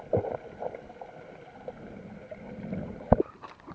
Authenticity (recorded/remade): recorded